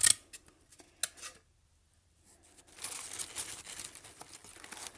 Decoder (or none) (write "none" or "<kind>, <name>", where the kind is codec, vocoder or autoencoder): none